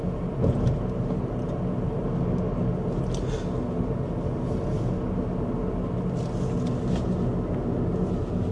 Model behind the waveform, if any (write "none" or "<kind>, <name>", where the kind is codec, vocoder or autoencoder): none